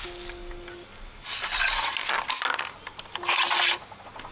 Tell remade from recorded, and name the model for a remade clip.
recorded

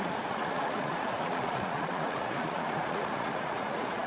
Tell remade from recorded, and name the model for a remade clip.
remade, vocoder, Vocos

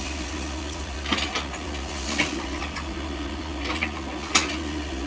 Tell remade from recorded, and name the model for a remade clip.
remade, vocoder, Vocos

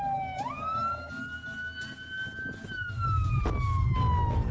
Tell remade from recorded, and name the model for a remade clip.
recorded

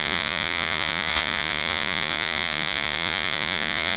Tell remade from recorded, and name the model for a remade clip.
remade, vocoder, Vocos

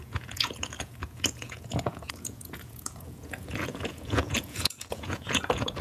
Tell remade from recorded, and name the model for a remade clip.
remade, vocoder, Vocos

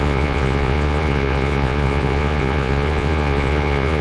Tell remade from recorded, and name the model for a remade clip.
remade, vocoder, Vocos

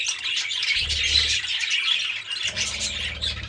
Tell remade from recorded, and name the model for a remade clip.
recorded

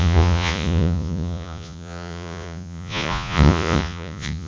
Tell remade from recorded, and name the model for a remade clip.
remade, vocoder, Vocos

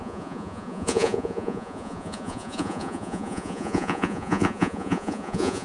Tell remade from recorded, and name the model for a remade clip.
remade, vocoder, Vocos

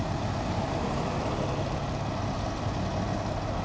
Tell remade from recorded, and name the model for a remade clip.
recorded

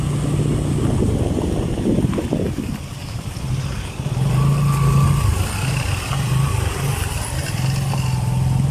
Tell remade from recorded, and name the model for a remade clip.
recorded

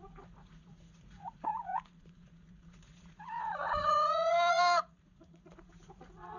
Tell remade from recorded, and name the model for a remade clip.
remade, vocoder, Vocos